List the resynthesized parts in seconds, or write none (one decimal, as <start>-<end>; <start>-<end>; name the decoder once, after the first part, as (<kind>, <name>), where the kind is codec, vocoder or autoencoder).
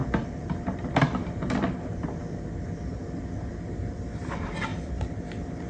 0.0-2.5 (vocoder, BigVGAN v2); 3.0-4.2; 4.7-5.7